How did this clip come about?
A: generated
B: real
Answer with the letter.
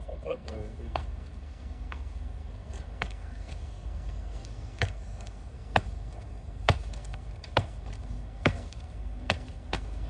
A